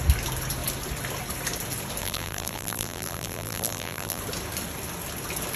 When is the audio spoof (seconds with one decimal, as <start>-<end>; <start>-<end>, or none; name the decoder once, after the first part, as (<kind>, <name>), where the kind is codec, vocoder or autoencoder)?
2.0-4.2 (vocoder, BigVGAN v2)